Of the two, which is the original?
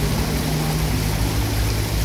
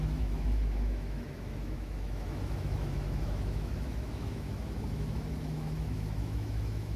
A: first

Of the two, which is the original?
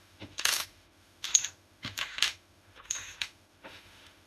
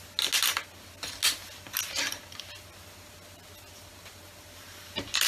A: second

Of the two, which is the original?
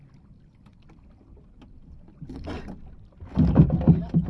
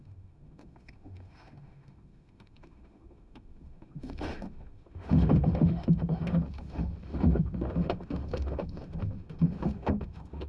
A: first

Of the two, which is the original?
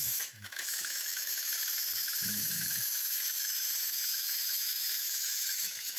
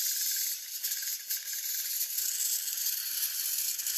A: second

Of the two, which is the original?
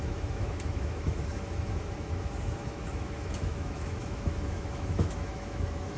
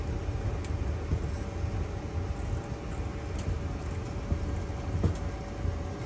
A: second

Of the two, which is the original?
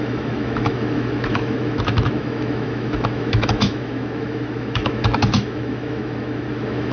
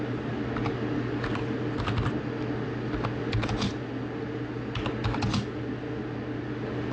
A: second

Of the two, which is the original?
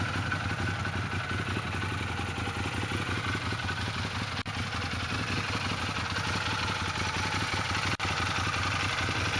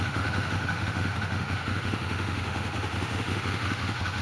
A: first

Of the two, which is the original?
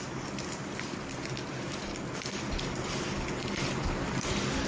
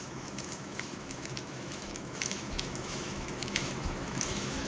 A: first